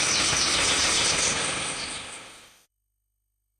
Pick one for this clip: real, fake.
fake